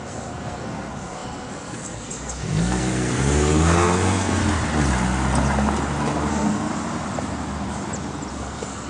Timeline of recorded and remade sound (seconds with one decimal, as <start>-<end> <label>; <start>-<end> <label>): 0.0-4.4 remade; 4.4-6.3 recorded; 6.3-6.7 remade; 6.7-8.3 recorded; 8.3-8.9 remade

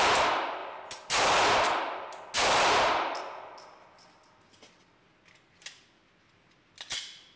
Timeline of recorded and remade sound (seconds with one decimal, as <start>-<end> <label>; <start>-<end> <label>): 0.0-7.4 recorded

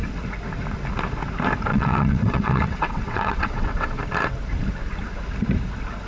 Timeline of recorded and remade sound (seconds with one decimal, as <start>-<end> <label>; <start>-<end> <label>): 0.0-1.7 recorded; 1.7-4.0 remade; 4.0-6.1 recorded

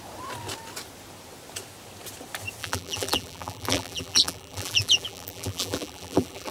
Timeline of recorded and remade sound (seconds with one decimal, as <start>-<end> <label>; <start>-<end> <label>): 0.0-2.6 recorded; 2.6-6.5 remade